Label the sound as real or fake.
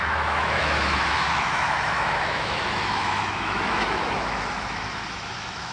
fake